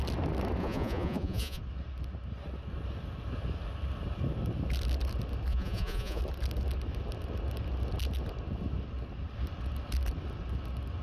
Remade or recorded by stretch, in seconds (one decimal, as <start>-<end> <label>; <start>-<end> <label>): 0.0-0.6 recorded; 0.6-1.6 remade; 1.6-5.5 recorded; 5.5-6.2 remade; 6.2-11.0 recorded